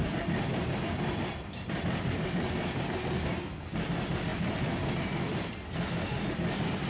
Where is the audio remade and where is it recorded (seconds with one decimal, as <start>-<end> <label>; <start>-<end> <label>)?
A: 0.0-3.8 remade; 3.8-4.3 recorded; 4.3-5.5 remade; 5.5-6.9 recorded